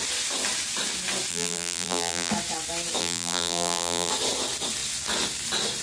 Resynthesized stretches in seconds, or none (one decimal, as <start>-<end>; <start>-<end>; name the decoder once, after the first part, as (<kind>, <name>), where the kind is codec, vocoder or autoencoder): 1.3-2.3 (vocoder, BigVGAN v2); 3.0-4.1